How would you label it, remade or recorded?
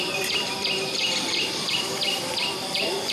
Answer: remade